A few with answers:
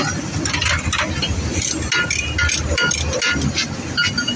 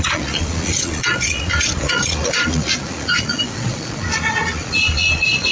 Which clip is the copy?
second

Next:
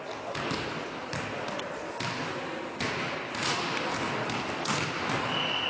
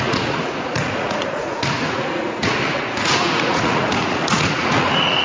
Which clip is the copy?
second